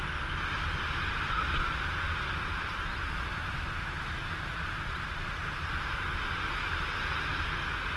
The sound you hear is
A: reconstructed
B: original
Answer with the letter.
B